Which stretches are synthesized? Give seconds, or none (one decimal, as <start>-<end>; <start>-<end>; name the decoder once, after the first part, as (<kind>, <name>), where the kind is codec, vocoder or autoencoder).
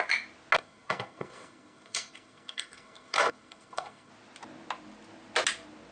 0.6-4.1 (codec, SNAC)